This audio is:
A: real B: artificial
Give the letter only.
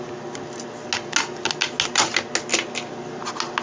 A